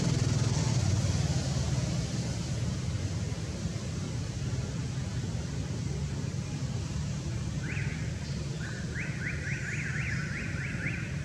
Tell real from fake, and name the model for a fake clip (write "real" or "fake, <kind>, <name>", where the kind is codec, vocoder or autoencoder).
real